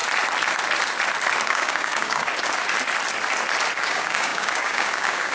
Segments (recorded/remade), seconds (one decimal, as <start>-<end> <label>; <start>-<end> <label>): 0.0-1.4 recorded; 1.4-2.3 remade; 2.3-3.8 recorded; 3.8-5.3 remade

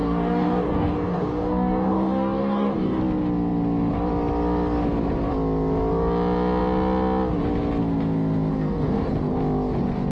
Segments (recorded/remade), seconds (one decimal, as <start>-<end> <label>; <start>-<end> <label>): 0.0-3.0 remade; 3.0-8.5 recorded; 8.5-9.1 remade; 9.1-10.1 recorded

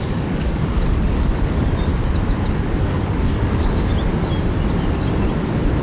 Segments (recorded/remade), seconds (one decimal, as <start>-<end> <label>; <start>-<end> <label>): 0.0-1.9 remade; 1.9-2.8 recorded; 2.8-3.9 remade; 3.9-5.8 recorded

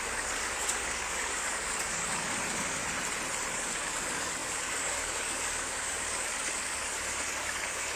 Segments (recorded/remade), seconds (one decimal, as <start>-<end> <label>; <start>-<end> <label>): 0.0-2.8 remade; 2.8-3.5 recorded; 3.5-8.0 remade

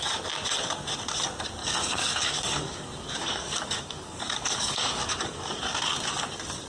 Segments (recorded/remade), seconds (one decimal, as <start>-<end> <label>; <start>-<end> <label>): 0.0-1.6 recorded; 1.6-5.6 remade; 5.6-6.7 recorded

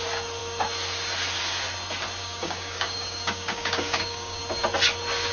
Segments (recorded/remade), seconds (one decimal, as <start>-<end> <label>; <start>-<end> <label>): 0.0-2.2 recorded; 2.2-4.4 remade; 4.4-5.3 recorded

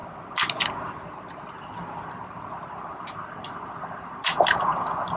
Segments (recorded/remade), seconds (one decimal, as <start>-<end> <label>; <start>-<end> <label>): 0.0-5.2 recorded